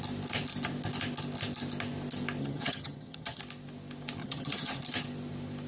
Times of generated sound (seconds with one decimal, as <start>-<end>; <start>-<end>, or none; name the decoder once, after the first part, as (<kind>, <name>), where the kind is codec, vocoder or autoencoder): 2.4-3.4 (vocoder, HiFi-GAN); 4.2-4.8